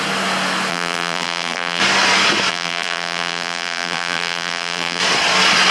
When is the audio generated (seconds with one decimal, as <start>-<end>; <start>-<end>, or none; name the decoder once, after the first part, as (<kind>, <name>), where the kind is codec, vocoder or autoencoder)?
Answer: 0.7-1.8 (vocoder, BigVGAN v2); 2.5-5.0